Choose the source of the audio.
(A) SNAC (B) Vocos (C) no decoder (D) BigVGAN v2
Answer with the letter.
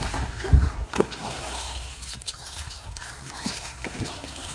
A